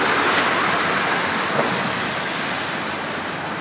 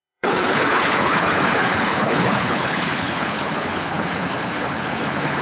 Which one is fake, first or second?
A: second